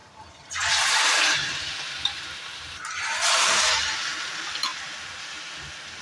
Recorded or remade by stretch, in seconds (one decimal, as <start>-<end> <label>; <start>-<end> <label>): 0.0-3.6 remade; 3.6-4.7 recorded; 4.7-5.5 remade; 5.5-6.0 recorded